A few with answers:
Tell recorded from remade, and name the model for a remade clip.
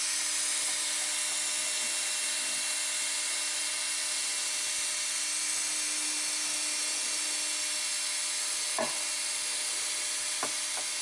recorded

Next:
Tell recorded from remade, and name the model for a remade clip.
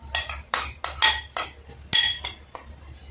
recorded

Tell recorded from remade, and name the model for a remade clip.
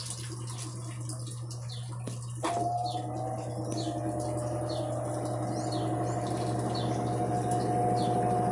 recorded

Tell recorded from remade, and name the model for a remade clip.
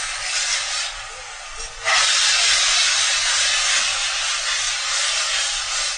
recorded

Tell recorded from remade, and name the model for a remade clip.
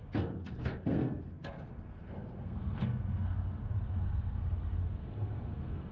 remade, codec, SNAC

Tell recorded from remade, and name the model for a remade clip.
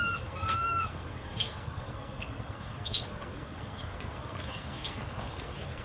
remade, codec, SNAC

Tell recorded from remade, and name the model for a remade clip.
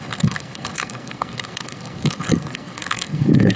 remade, codec, SNAC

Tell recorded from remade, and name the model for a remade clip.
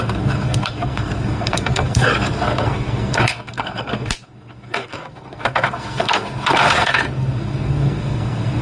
remade, codec, SNAC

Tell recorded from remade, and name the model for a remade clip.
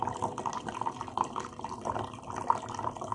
recorded